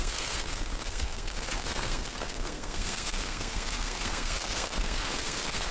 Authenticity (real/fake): fake